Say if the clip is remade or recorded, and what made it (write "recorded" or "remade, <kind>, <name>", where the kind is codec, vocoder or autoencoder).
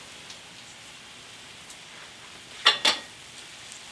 recorded